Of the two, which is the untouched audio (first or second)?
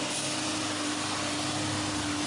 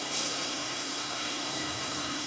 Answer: first